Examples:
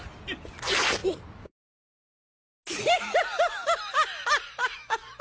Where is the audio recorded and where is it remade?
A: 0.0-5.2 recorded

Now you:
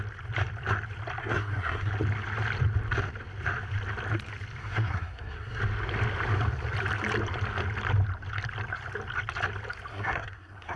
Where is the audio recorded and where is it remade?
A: 0.0-1.2 recorded; 1.2-1.9 remade; 1.9-4.6 recorded; 4.6-5.6 remade; 5.6-9.9 recorded; 9.9-10.8 remade

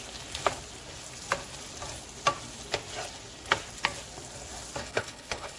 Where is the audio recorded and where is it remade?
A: 0.0-4.8 recorded; 4.8-5.6 remade

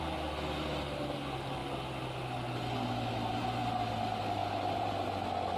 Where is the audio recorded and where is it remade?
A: 0.0-4.4 recorded; 4.4-4.9 remade; 4.9-5.6 recorded